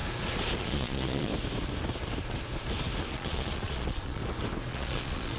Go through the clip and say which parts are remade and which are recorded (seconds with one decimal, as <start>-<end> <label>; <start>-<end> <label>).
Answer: 0.0-0.6 recorded; 0.6-1.3 remade; 1.3-3.1 recorded; 3.1-4.2 remade; 4.2-4.7 recorded; 4.7-5.4 remade